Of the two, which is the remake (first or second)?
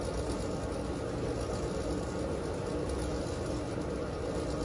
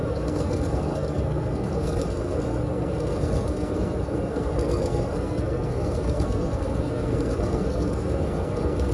second